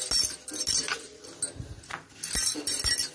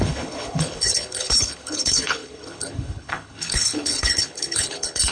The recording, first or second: first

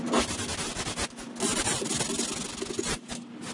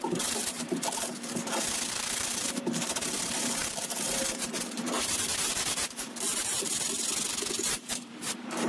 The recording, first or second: first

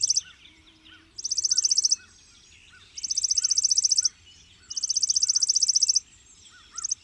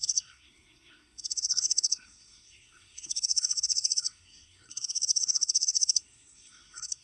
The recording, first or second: first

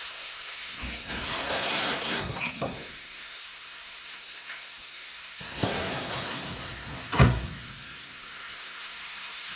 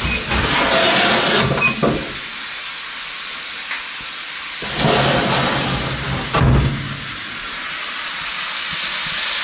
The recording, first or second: second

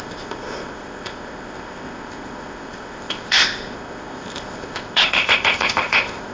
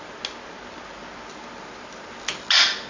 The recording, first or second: second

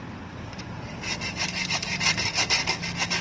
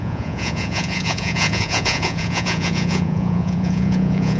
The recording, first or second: first